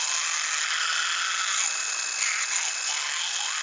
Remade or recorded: recorded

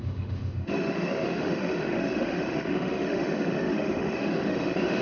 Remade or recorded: remade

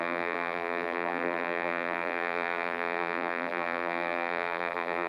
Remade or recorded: remade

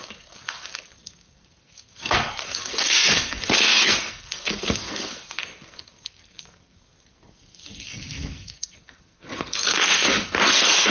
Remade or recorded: remade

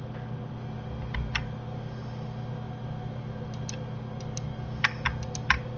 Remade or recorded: recorded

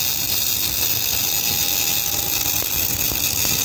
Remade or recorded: recorded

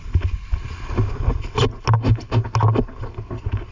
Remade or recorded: recorded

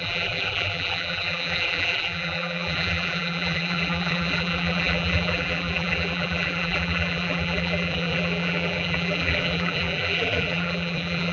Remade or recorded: remade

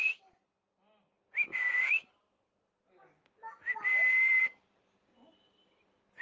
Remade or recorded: recorded